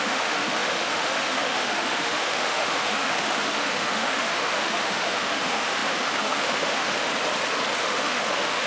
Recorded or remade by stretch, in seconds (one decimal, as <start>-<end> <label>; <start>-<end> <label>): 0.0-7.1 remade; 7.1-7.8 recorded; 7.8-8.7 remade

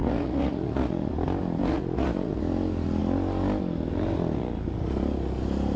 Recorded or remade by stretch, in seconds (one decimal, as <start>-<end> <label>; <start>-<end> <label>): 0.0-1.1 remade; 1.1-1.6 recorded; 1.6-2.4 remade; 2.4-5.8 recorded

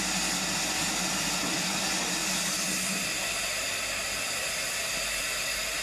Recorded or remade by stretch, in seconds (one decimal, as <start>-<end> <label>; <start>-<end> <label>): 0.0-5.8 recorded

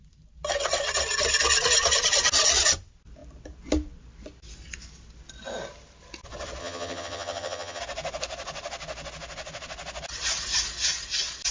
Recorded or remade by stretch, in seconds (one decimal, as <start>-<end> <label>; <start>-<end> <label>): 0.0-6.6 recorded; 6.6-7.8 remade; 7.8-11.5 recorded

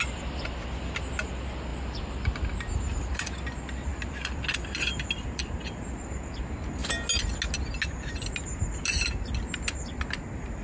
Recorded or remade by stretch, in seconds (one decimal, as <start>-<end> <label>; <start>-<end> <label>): 0.0-3.9 recorded; 3.9-6.1 remade; 6.1-10.6 recorded